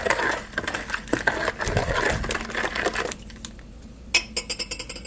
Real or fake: real